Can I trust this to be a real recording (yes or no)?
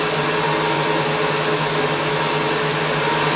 yes